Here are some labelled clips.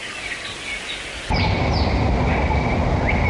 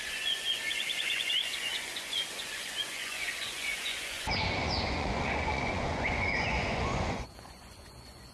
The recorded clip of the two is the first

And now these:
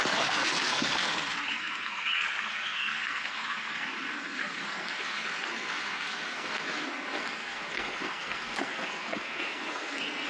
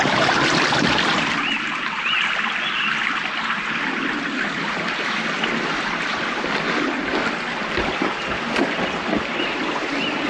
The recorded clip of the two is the second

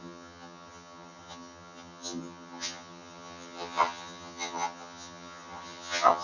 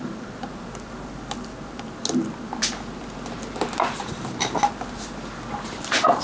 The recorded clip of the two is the second